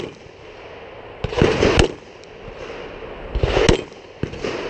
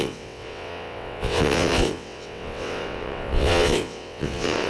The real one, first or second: first